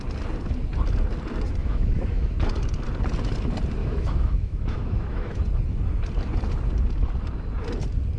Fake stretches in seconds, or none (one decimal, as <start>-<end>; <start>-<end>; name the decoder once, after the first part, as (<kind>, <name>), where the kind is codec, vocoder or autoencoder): 1.6-2.4 (autoencoder, DAC-VAE); 3.8-5.4